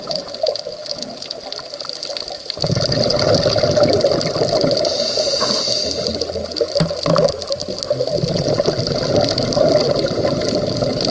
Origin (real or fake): real